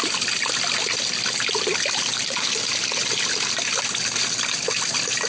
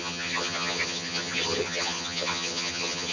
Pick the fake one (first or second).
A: second